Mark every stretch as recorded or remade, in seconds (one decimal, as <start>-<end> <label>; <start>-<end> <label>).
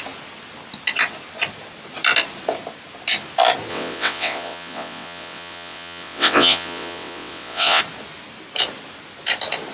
0.0-3.7 recorded; 3.7-7.8 remade; 7.8-9.7 recorded